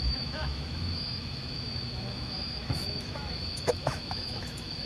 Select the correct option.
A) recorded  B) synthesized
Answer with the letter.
B